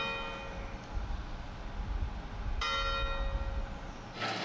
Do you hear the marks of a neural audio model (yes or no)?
no